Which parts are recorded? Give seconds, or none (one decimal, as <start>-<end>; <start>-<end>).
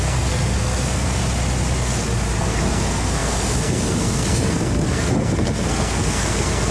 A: 1.2-2.4